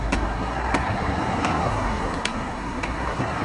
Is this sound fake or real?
fake